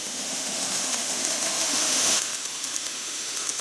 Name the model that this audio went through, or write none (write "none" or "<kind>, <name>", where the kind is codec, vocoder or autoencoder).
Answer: autoencoder, DAC-VAE